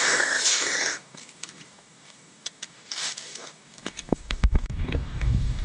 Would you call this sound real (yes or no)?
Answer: no